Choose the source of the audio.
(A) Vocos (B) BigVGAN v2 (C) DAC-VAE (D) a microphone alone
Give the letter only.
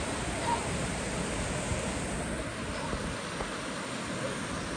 D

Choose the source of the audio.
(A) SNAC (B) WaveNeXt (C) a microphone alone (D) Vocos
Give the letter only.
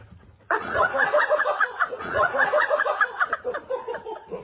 D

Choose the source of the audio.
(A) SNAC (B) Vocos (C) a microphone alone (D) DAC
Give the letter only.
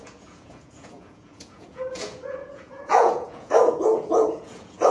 B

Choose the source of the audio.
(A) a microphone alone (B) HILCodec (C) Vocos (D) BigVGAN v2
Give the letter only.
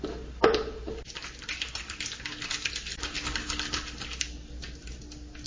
A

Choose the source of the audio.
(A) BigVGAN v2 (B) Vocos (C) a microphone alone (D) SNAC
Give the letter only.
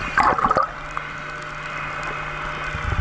C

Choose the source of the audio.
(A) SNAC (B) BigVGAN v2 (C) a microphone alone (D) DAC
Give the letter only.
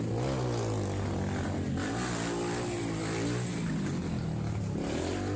C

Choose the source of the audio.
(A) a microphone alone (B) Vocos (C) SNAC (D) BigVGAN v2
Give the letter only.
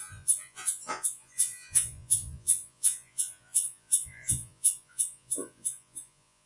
B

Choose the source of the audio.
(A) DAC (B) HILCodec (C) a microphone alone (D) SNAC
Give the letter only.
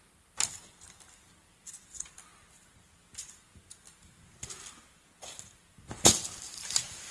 C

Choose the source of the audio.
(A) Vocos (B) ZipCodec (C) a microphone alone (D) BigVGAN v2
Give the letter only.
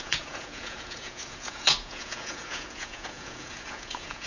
A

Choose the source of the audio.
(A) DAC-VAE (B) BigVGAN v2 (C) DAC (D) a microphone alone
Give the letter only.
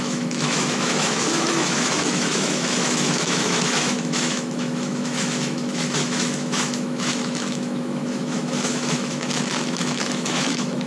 A